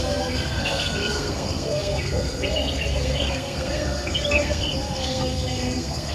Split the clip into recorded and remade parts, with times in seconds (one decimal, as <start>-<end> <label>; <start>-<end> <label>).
0.0-6.1 remade